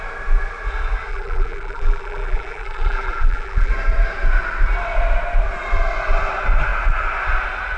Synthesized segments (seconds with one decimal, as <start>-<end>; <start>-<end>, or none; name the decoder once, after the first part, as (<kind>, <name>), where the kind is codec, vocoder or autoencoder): 1.1-3.7 (vocoder, BigVGAN v2)